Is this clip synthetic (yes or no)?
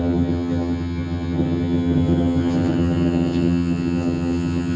yes